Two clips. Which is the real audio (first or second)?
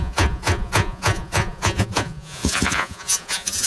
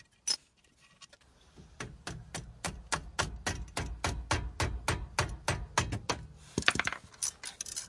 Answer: second